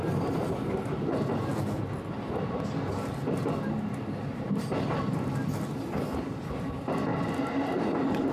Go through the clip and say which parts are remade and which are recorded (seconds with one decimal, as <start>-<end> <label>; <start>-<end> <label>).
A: 0.0-4.3 recorded; 4.3-5.3 remade; 5.3-7.1 recorded; 7.1-7.8 remade; 7.8-8.3 recorded